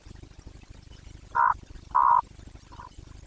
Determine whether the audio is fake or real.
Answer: real